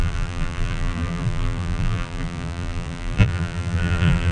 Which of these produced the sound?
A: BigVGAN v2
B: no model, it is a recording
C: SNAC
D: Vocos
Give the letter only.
A